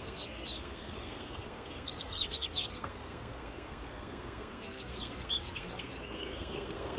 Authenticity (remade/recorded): remade